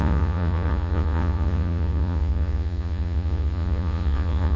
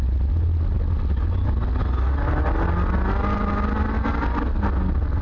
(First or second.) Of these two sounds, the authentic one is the second